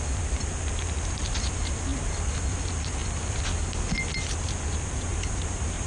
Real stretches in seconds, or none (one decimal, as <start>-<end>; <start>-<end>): 0.0-5.1